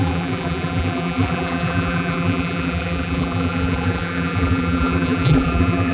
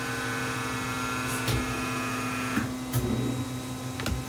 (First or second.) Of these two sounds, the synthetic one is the first